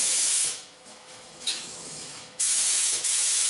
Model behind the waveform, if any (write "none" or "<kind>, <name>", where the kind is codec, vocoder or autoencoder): autoencoder, DAC-VAE